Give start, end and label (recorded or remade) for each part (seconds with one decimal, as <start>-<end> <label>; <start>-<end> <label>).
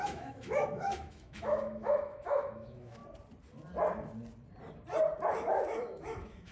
0.0-3.0 remade; 3.0-5.3 recorded; 5.3-6.5 remade